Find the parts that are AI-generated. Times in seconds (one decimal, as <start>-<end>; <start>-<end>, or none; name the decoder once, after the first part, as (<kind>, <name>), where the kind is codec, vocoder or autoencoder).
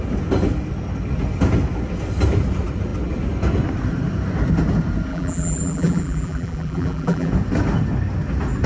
5.1-7.3 (vocoder, BigVGAN v2)